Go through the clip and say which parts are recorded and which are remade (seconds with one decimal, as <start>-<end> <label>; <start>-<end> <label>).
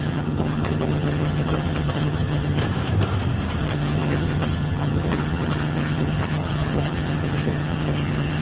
0.0-2.6 remade; 2.6-3.6 recorded; 3.6-8.4 remade